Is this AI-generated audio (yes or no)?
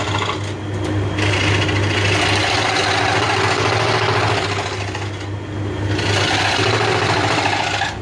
no